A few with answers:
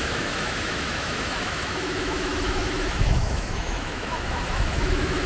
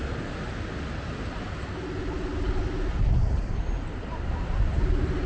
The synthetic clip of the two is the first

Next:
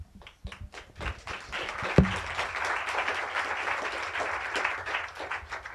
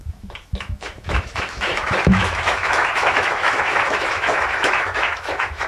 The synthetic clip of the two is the second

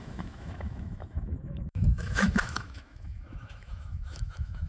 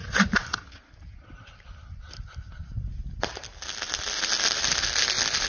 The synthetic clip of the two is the first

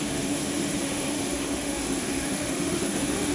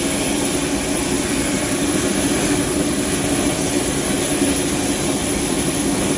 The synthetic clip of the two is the first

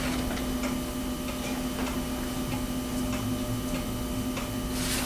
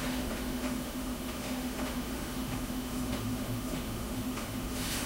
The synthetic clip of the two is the second